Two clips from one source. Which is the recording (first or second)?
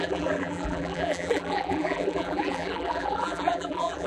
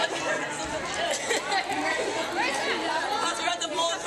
second